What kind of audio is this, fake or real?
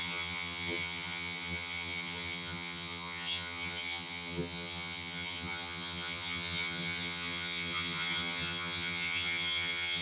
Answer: fake